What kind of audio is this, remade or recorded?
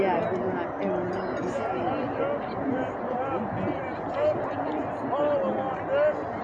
recorded